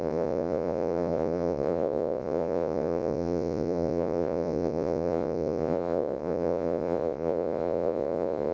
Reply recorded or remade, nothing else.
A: remade